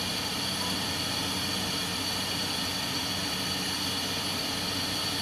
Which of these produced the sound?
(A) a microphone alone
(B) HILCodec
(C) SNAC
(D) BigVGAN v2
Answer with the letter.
A